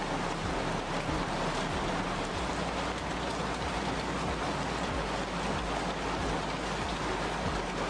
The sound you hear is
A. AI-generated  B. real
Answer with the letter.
B